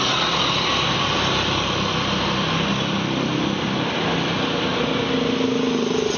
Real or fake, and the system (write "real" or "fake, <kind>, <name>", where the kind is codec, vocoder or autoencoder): real